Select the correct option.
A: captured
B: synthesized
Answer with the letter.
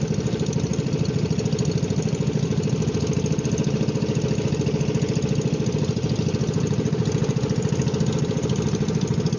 A